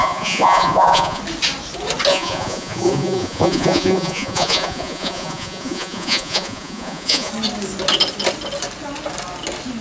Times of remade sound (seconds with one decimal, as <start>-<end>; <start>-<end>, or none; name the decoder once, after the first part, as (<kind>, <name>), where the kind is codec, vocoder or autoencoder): 0.0-1.2 (vocoder, Vocos); 2.1-7.3